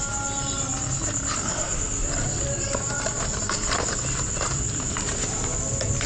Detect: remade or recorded recorded